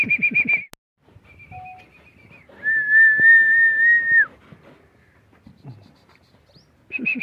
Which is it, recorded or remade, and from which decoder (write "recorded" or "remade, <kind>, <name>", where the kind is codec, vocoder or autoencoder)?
recorded